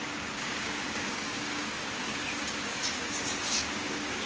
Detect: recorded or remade remade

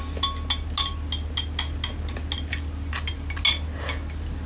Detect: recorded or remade recorded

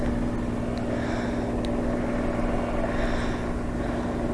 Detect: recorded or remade recorded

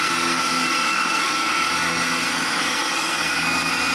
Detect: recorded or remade remade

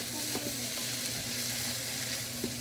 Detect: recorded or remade recorded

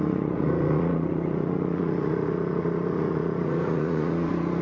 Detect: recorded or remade remade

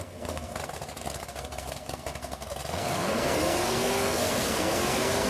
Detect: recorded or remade remade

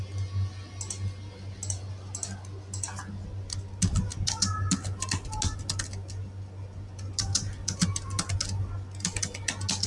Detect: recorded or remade recorded